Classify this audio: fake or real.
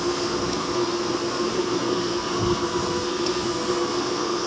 fake